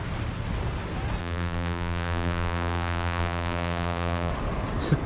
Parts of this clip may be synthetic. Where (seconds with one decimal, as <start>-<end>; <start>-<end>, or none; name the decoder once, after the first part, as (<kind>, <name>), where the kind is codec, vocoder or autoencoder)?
1.2-4.3 (vocoder, BigVGAN v2)